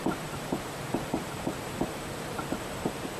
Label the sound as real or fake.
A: fake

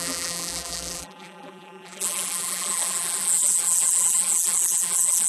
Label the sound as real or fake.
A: fake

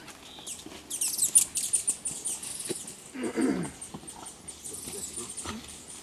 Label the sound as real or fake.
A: real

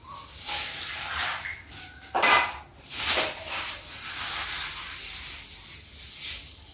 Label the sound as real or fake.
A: real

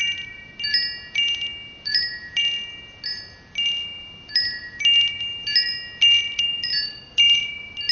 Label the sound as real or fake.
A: real